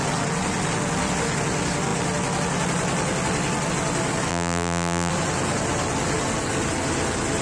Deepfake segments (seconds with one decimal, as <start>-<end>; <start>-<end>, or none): 4.3-5.1